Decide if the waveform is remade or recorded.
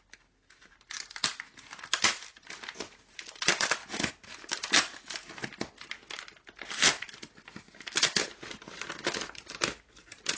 recorded